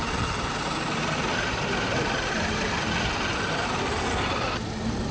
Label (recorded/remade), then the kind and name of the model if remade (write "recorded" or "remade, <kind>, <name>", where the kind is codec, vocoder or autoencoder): recorded